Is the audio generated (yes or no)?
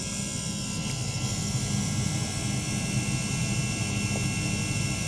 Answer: no